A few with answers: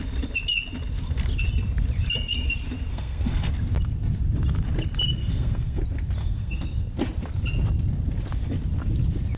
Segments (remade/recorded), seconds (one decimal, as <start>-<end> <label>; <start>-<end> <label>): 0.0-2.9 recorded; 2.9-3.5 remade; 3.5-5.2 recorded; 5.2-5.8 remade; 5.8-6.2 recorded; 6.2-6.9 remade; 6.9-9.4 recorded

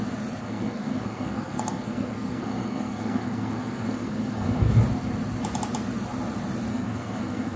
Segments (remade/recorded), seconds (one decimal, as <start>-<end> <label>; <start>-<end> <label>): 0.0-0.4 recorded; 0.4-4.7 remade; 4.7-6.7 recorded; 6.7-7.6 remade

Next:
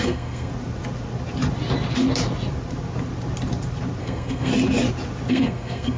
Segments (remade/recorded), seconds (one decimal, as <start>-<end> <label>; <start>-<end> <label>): 0.0-0.5 remade; 0.5-4.0 recorded; 4.0-4.5 remade; 4.5-5.3 recorded; 5.3-6.0 remade

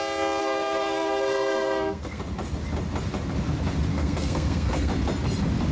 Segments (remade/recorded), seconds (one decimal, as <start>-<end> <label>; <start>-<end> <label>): 0.0-0.4 recorded; 0.4-2.2 remade; 2.2-3.9 recorded; 3.9-4.9 remade; 4.9-5.7 recorded